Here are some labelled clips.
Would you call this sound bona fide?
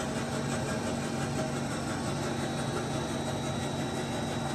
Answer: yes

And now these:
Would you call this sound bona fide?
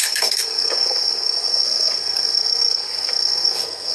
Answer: no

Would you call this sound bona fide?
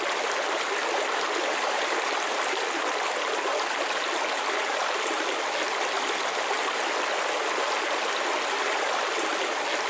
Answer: yes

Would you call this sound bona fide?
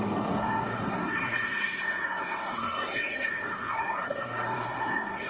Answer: no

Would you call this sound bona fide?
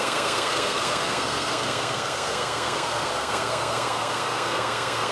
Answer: no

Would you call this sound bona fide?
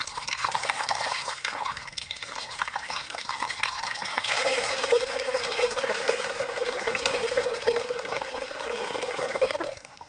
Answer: no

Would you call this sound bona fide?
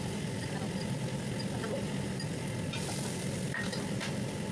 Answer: yes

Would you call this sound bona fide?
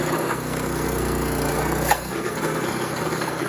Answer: no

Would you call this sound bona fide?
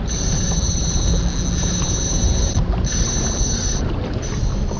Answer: yes